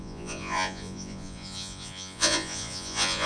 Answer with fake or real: fake